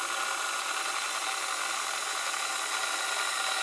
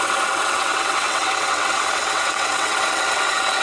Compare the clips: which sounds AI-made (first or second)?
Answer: second